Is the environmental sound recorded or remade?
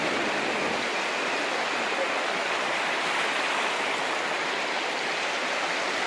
recorded